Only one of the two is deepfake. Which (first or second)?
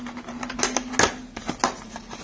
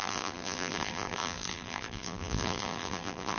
second